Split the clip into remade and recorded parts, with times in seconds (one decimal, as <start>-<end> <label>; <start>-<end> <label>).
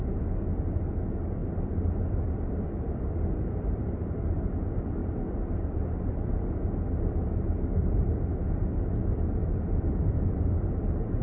0.0-1.4 recorded; 1.4-3.7 remade; 3.7-5.0 recorded; 5.0-6.6 remade; 6.6-9.4 recorded; 9.4-10.1 remade; 10.1-11.2 recorded